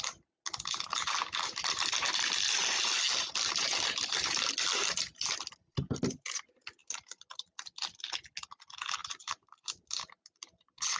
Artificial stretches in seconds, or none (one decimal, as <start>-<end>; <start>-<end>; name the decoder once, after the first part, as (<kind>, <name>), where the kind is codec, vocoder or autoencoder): 6.8-7.5 (vocoder, BigVGAN v2); 9.0-11.0